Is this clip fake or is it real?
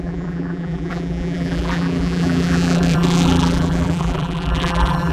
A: fake